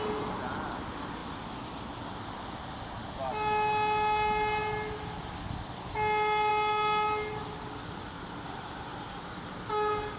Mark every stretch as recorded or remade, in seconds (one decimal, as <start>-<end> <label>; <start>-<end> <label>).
0.0-10.2 recorded